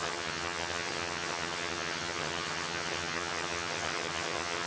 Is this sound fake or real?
fake